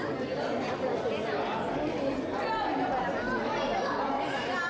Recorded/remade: recorded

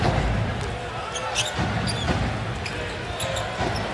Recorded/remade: recorded